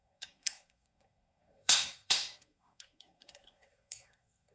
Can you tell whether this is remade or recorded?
remade